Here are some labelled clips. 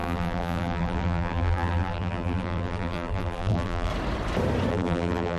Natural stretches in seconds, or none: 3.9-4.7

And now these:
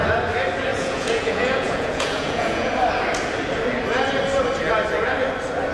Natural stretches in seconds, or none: 0.0-0.7; 2.8-5.7

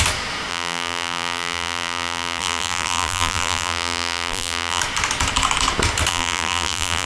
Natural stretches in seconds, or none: 0.0-0.5; 4.8-6.1

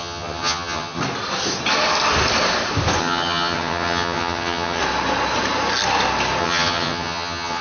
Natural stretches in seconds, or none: 1.0-3.0; 4.8-6.4